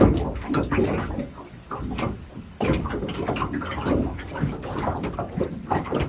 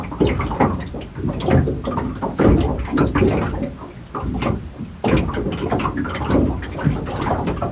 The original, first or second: second